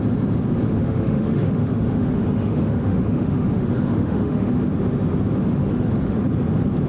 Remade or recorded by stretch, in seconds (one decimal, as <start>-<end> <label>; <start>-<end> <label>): 0.0-0.8 recorded; 0.8-4.5 remade; 4.5-5.6 recorded; 5.6-6.2 remade; 6.2-6.9 recorded